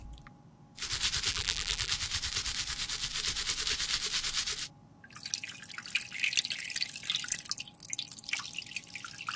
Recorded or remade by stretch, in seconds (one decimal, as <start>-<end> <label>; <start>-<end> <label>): 0.0-1.3 recorded; 1.3-1.9 remade; 1.9-9.4 recorded